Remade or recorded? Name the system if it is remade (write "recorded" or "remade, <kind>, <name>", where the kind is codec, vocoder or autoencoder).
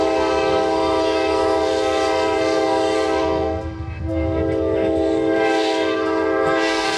remade, codec, SNAC